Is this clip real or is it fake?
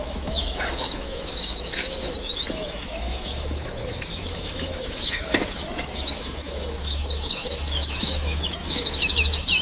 fake